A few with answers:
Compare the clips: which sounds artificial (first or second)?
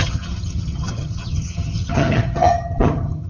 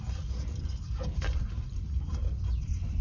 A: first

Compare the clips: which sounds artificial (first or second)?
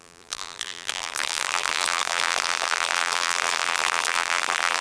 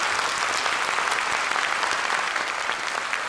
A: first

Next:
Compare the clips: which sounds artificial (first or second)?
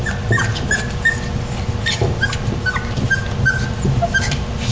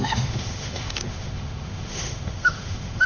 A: second